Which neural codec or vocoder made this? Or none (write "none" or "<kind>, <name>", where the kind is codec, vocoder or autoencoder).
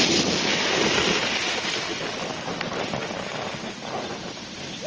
none